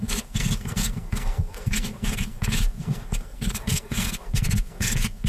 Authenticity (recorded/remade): remade